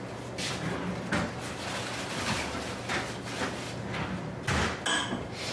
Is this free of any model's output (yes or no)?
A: yes